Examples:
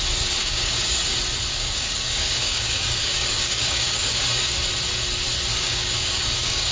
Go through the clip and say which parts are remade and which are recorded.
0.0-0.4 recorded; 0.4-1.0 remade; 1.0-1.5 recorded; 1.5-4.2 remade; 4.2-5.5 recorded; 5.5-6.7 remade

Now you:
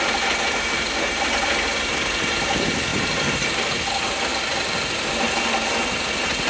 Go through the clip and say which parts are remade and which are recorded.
0.0-2.9 recorded; 2.9-3.8 remade; 3.8-6.5 recorded